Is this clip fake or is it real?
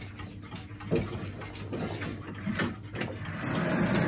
real